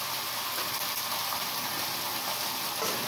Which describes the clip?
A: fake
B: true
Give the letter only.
B